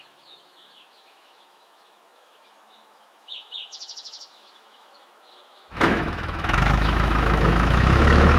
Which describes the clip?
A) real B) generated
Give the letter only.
B